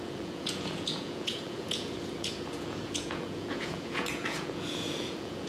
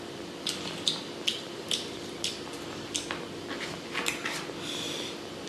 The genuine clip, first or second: second